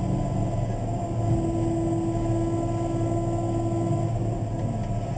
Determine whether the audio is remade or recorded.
recorded